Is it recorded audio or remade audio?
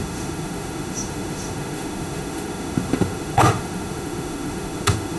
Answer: remade